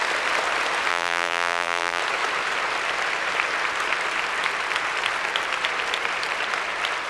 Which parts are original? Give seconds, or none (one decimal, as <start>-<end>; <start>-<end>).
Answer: 0.0-0.9; 2.0-7.1